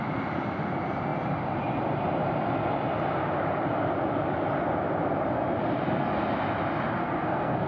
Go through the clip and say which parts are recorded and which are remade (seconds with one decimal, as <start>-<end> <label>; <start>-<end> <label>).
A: 0.0-7.0 recorded; 7.0-7.7 remade